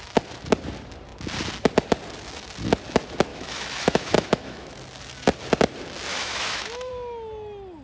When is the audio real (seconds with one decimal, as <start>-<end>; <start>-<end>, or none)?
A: 0.0-3.3; 4.7-6.1; 6.9-7.8